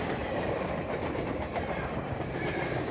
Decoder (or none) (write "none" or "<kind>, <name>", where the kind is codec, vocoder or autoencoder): vocoder, BigVGAN v2